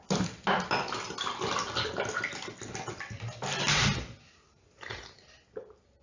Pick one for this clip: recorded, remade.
recorded